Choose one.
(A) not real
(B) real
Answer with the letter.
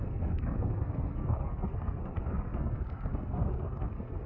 A